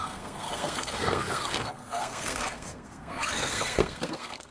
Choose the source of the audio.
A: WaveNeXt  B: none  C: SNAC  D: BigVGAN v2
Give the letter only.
C